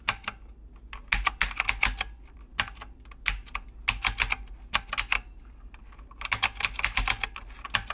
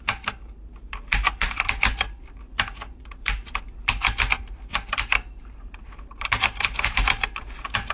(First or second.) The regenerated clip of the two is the second